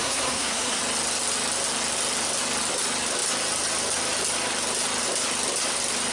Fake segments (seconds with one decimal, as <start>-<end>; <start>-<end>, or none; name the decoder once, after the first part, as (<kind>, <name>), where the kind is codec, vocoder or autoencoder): 0.0-0.8 (codec, SNAC)